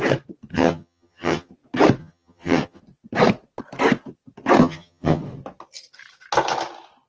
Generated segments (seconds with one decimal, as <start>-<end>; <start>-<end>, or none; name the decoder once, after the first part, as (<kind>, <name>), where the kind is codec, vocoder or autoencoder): 0.5-1.5 (vocoder, HiFi-GAN); 2.0-2.8; 4.6-5.2